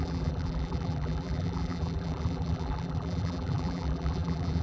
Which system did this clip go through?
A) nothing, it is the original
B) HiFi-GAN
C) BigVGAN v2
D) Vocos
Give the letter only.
C